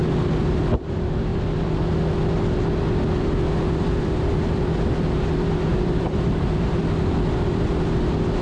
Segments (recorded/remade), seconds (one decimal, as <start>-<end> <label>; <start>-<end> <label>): 0.0-5.7 recorded; 5.7-6.8 remade; 6.8-8.4 recorded